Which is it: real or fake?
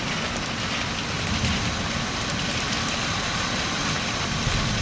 real